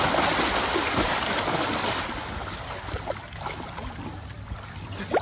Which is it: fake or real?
real